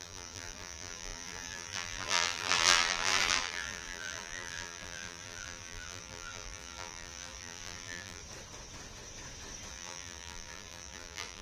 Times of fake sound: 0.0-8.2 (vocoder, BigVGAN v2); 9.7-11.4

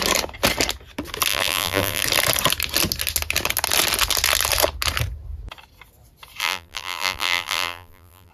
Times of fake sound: 1.3-2.0 (vocoder, BigVGAN v2); 6.4-8.3

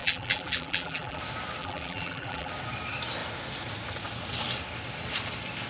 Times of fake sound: 0.0-1.2 (vocoder, BigVGAN v2); 1.6-2.5

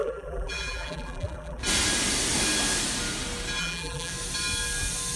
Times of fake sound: 0.0-1.6 (vocoder, BigVGAN v2); 3.6-4.1

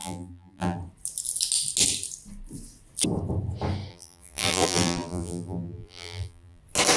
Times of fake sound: 0.0-0.8 (vocoder, BigVGAN v2); 3.9-6.6

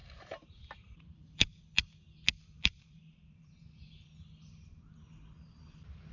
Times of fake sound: 0.0-1.6 (vocoder, BigVGAN v2); 2.4-4.1